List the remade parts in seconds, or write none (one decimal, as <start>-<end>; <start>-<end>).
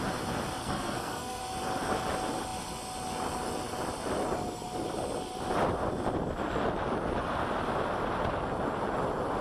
0.6-1.4